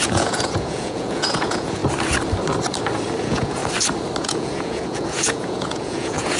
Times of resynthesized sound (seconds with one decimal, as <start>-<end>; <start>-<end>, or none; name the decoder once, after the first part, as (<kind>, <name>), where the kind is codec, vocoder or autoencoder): 0.0-1.8 (vocoder, Vocos); 3.2-3.6; 4.2-6.4